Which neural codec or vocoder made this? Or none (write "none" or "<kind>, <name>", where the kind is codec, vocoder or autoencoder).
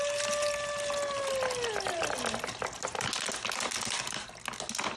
none